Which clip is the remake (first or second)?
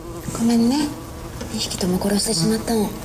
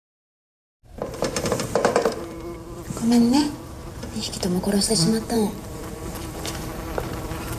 second